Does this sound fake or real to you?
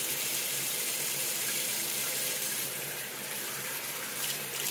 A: fake